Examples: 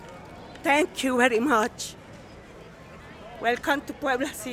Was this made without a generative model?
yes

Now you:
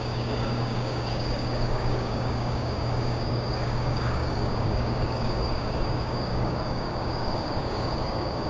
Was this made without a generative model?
no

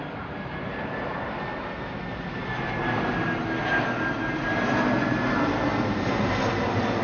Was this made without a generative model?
yes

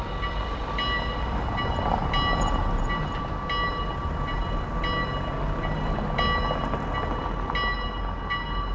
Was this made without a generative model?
yes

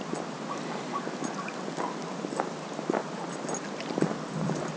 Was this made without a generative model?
yes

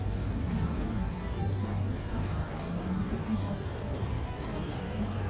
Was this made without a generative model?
no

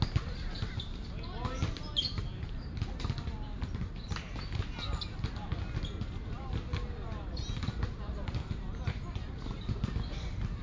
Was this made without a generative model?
yes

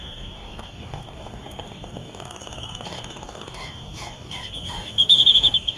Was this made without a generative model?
no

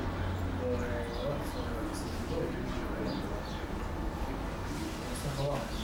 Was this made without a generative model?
yes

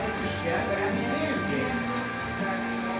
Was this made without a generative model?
yes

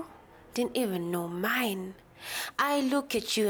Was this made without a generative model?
yes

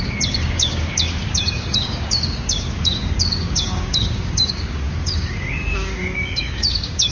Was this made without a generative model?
no